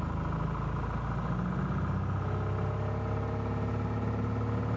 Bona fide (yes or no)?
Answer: yes